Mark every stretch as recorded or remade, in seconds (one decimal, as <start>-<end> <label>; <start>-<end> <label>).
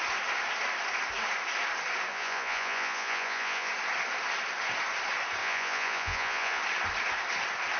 0.0-2.1 recorded; 2.1-3.7 remade; 3.7-5.4 recorded; 5.4-6.6 remade; 6.6-7.8 recorded